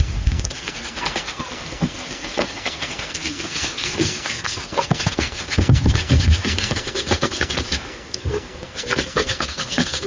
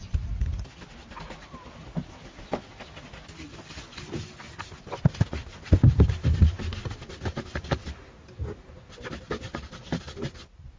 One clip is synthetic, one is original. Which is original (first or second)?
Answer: second